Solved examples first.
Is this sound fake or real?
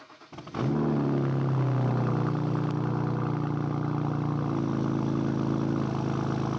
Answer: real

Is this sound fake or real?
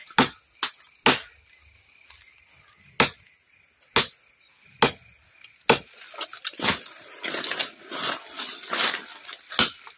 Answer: real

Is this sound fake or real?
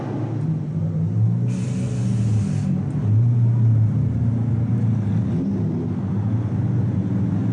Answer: real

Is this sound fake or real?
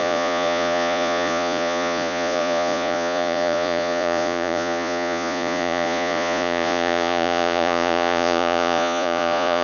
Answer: fake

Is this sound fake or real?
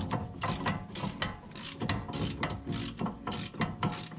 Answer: real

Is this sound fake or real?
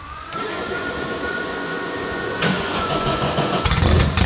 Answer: fake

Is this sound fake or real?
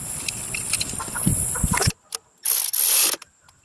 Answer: real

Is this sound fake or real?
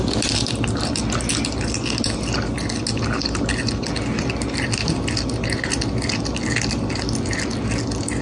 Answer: real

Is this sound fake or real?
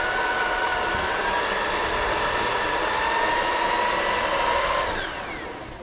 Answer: real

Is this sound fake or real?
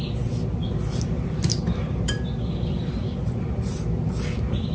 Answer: real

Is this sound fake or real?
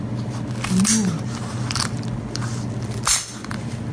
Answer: real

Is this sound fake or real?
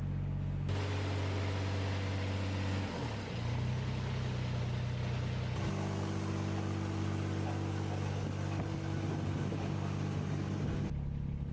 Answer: real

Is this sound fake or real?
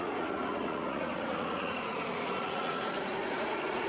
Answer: fake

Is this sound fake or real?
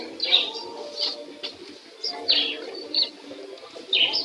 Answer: real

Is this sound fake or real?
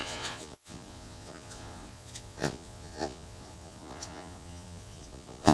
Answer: fake